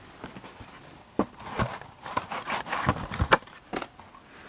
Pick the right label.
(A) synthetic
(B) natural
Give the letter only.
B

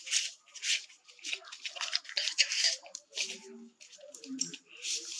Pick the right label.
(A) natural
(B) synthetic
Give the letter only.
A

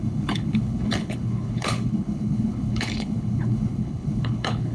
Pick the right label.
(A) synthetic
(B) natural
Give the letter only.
A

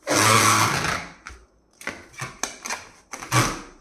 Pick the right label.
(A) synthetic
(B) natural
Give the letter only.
B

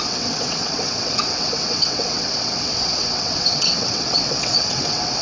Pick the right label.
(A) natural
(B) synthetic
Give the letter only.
B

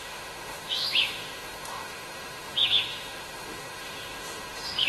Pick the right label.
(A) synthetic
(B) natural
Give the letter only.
A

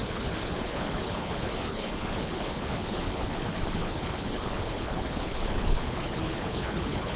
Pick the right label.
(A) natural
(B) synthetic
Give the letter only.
B